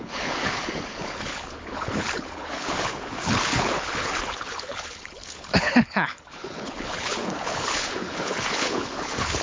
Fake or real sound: fake